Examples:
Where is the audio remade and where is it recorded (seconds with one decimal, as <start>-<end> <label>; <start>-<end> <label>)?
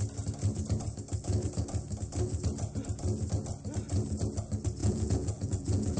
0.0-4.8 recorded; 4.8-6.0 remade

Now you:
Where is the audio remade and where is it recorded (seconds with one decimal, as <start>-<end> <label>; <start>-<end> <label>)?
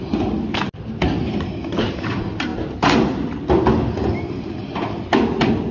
0.0-5.7 recorded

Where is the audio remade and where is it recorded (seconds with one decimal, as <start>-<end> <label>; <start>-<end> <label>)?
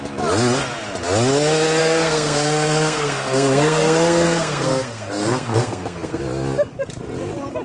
0.0-1.8 recorded; 1.8-6.2 remade; 6.2-7.6 recorded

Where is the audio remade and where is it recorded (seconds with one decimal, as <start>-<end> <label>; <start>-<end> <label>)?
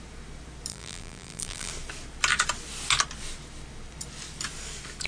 0.0-0.7 recorded; 0.7-1.7 remade; 1.7-5.1 recorded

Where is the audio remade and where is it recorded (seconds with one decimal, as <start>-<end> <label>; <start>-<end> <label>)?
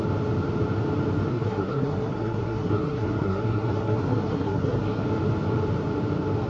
0.0-1.3 recorded; 1.3-5.0 remade; 5.0-6.5 recorded